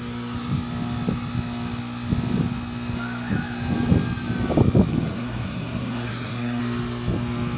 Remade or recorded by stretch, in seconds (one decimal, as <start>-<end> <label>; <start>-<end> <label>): 0.0-4.9 recorded; 4.9-6.6 remade; 6.6-7.6 recorded